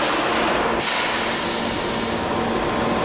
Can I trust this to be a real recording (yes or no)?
yes